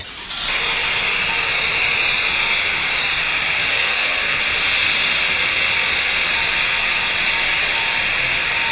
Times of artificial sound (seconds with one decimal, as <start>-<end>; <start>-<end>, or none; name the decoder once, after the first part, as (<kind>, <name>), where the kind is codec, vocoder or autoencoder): 3.7-4.4 (codec, SNAC)